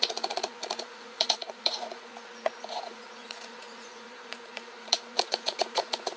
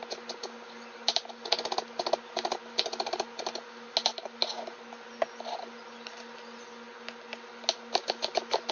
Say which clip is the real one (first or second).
second